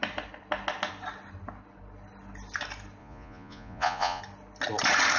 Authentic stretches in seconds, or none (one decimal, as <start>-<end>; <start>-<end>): 0.0-3.0; 4.2-5.2